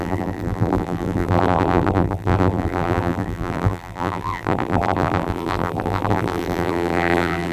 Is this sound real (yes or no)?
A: no